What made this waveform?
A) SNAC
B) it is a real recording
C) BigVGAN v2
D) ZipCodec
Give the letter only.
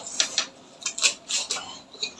B